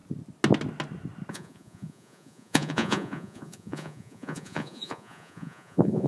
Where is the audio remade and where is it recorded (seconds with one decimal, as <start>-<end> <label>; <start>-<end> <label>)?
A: 0.0-1.3 recorded; 1.3-6.1 remade